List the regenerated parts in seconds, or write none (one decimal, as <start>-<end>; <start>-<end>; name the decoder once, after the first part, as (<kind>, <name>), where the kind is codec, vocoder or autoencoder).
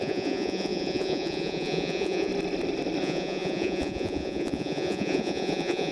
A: 0.0-2.3 (vocoder, Vocos); 3.0-5.9